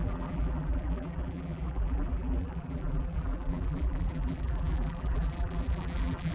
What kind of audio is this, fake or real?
fake